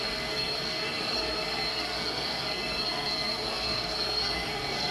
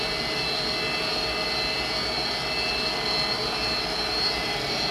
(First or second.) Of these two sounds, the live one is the second